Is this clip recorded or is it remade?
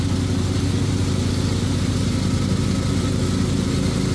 remade